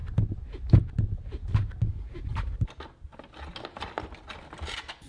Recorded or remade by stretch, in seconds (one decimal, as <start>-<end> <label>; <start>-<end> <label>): 0.0-5.1 recorded

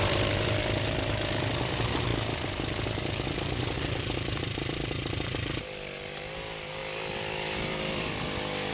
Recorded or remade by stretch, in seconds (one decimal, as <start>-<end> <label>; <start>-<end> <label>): 0.0-2.1 remade; 2.1-3.4 recorded; 3.4-6.8 remade; 6.8-8.7 recorded

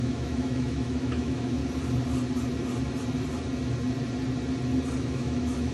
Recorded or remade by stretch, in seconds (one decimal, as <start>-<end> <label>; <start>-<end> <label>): 0.0-1.6 remade; 1.6-5.0 recorded; 5.0-5.7 remade

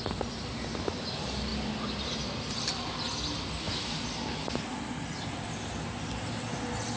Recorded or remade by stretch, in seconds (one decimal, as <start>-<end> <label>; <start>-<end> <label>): 0.0-7.0 recorded

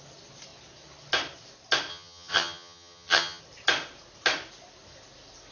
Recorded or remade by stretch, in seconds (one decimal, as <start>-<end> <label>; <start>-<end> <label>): 0.0-1.9 recorded; 1.9-3.4 remade; 3.4-5.5 recorded

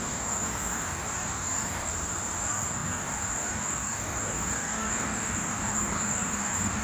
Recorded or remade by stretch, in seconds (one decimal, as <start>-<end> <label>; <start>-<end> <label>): 0.0-1.9 remade; 1.9-2.4 recorded; 2.4-6.8 remade

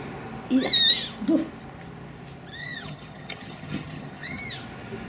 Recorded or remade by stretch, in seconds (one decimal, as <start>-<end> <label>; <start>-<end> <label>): 0.0-2.6 recorded; 2.6-4.4 remade; 4.4-5.1 recorded